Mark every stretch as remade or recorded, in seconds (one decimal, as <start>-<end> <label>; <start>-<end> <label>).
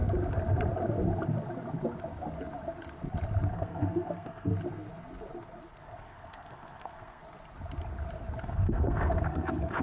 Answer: 0.0-3.5 recorded; 3.5-4.5 remade; 4.5-5.8 recorded; 5.8-7.2 remade; 7.2-8.4 recorded; 8.4-9.8 remade